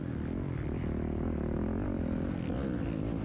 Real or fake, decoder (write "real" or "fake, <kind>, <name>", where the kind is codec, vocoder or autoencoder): real